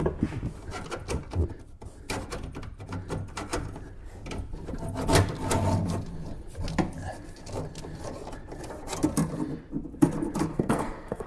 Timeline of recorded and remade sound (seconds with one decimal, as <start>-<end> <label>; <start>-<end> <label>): 0.0-10.5 recorded; 10.5-11.3 remade